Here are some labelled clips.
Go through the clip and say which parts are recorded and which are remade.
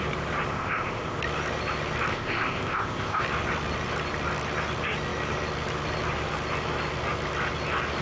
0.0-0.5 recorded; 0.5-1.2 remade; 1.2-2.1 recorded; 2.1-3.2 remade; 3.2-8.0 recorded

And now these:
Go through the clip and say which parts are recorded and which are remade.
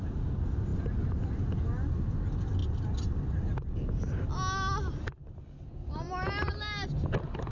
0.0-7.5 recorded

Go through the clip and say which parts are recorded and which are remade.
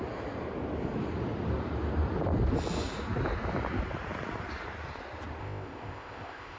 0.0-5.4 recorded; 5.4-6.6 remade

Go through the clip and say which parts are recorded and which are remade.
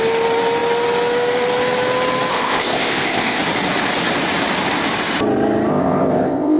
0.0-2.3 recorded; 2.3-3.4 remade; 3.4-5.7 recorded; 5.7-6.6 remade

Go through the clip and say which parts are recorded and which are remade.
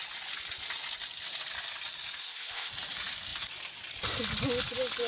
0.0-2.2 recorded; 2.2-2.7 remade; 2.7-5.1 recorded